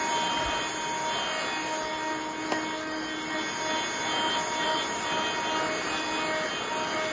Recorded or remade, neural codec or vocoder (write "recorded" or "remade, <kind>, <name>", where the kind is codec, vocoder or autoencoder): recorded